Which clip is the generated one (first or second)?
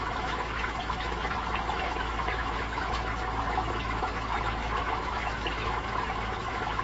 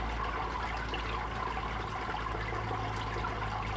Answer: first